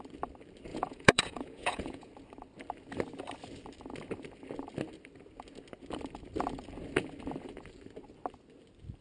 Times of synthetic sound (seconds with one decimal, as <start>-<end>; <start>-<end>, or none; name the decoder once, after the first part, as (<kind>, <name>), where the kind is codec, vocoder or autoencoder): 0.7-2.1 (vocoder, Vocos)